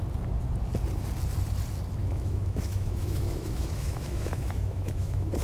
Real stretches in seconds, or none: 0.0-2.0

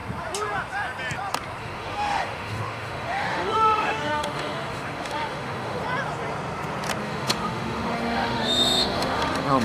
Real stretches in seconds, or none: 0.0-1.6; 5.8-7.0

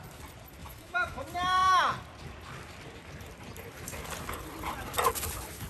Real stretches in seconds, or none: 0.0-0.6; 1.2-5.7

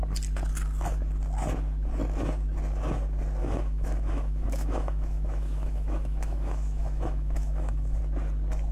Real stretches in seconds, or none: 0.0-3.4; 8.0-8.7

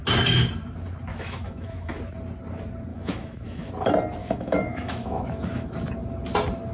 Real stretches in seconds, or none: 0.0-1.1; 2.0-2.9; 3.7-4.2; 5.7-6.7

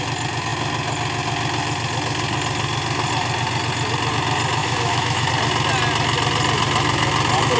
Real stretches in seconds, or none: 0.0-4.6; 5.3-7.6